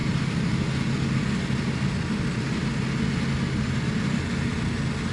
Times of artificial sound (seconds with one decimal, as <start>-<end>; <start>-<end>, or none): none